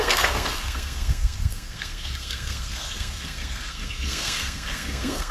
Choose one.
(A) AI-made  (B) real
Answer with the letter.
A